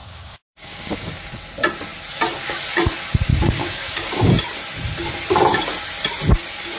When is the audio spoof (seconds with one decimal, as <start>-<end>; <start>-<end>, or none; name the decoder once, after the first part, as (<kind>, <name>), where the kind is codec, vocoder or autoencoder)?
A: 0.0-1.2 (codec, DAC); 3.3-4.2